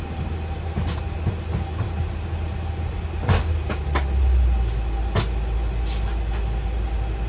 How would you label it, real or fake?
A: real